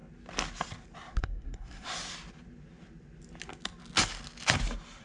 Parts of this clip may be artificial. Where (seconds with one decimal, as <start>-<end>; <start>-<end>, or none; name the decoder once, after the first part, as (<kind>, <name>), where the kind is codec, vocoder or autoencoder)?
1.2-1.9 (codec, SNAC)

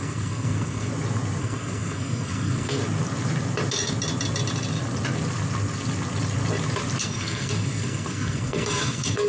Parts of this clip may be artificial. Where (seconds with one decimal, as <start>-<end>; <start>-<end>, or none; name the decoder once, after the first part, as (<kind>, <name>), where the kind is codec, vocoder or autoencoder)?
0.0-0.9 (codec, SNAC); 1.4-2.8; 7.0-9.3

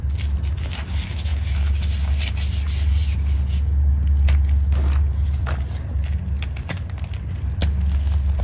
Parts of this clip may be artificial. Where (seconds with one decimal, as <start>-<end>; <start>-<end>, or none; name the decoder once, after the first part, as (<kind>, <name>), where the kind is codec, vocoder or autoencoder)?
none

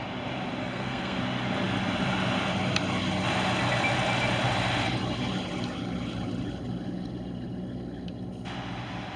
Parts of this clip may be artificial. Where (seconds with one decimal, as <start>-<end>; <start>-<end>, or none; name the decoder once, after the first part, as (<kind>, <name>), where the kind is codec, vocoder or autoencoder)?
0.7-1.2 (codec, SNAC)